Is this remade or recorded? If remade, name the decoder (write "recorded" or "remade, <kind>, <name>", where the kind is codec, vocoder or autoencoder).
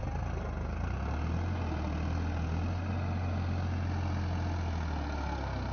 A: recorded